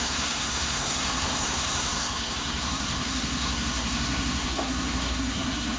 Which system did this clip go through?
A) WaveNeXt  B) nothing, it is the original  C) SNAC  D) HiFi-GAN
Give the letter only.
C